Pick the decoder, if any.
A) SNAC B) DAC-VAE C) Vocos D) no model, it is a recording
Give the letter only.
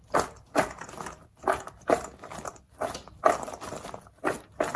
D